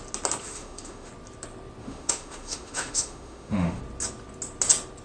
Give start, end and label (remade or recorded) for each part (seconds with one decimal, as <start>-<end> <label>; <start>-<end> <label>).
0.0-0.4 recorded; 0.4-1.1 remade; 1.1-1.8 recorded; 1.8-3.8 remade; 3.8-5.0 recorded